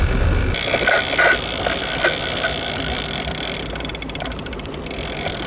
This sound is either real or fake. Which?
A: real